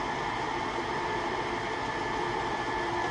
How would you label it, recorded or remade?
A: remade